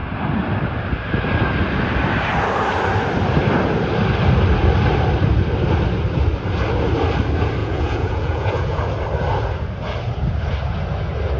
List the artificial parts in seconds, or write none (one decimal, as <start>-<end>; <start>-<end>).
7.6-8.8